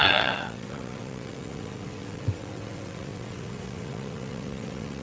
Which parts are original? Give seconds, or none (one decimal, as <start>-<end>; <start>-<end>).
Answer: none